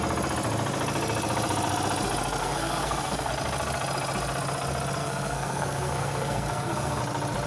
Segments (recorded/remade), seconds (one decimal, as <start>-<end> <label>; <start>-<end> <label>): 0.0-2.4 recorded; 2.4-3.3 remade; 3.3-5.0 recorded; 5.0-7.0 remade; 7.0-7.5 recorded

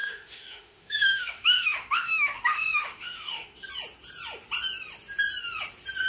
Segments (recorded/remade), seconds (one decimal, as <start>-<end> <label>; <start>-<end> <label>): 0.0-3.7 remade; 3.7-6.1 recorded

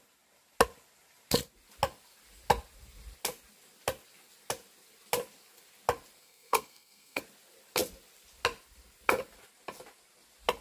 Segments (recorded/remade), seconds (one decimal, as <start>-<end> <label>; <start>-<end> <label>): 0.0-6.2 recorded; 6.2-7.2 remade; 7.2-10.6 recorded

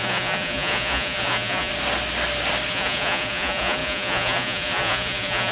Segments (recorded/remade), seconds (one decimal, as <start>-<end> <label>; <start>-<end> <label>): 0.0-1.7 remade; 1.7-2.7 recorded; 2.7-5.5 remade

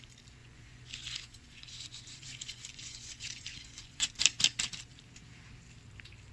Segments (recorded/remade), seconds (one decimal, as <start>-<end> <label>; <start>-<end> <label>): 0.0-0.4 recorded; 0.4-4.2 remade; 4.2-6.3 recorded

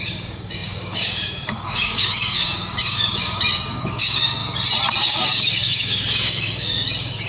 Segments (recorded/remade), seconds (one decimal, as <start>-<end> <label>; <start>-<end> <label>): 0.0-4.4 remade; 4.4-5.0 recorded; 5.0-7.3 remade